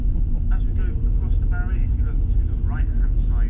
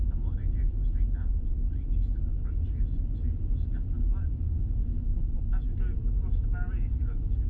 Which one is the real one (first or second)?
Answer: first